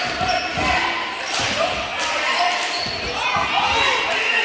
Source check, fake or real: real